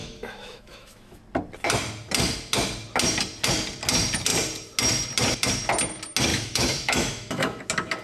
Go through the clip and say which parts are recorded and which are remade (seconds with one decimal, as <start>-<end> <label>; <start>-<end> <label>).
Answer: 0.0-1.2 remade; 1.2-6.3 recorded; 6.3-7.6 remade; 7.6-8.0 recorded